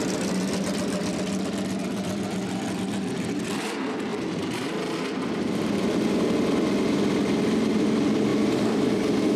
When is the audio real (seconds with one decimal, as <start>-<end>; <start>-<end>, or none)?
0.0-4.1; 4.7-8.3